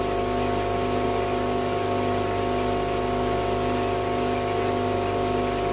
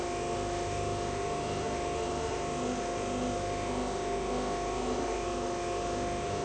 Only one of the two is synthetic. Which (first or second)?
second